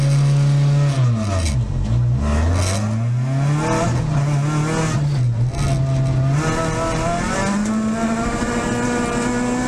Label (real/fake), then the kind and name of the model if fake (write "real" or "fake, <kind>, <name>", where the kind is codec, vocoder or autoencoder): real